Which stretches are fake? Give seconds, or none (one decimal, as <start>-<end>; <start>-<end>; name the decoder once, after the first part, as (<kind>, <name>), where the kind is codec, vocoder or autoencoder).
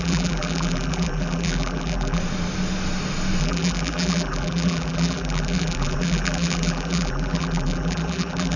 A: 0.0-2.2 (vocoder, BigVGAN v2); 3.4-8.6